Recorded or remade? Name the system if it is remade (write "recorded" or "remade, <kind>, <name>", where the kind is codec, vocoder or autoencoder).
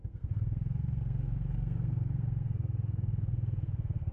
remade, codec, SNAC